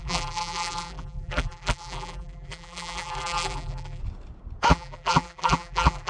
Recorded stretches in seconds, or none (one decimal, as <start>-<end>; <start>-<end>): 4.0-4.7